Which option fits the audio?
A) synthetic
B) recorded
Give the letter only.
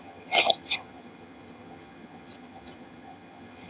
A